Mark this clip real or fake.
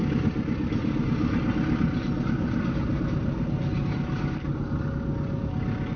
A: real